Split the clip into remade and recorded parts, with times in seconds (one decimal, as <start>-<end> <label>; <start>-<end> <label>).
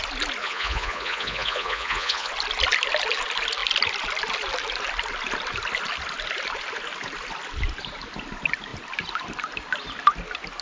0.0-0.4 recorded; 0.4-2.3 remade; 2.3-10.6 recorded